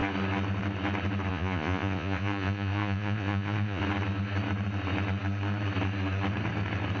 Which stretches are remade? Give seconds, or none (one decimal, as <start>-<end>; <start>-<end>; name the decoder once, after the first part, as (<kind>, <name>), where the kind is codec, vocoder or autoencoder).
1.3-3.8 (vocoder, Vocos)